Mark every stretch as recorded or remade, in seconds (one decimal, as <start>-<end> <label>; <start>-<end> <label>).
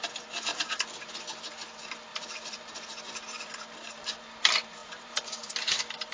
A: 0.0-0.5 recorded; 0.5-1.1 remade; 1.1-2.1 recorded; 2.1-2.9 remade; 2.9-4.8 recorded; 4.8-5.5 remade; 5.5-6.1 recorded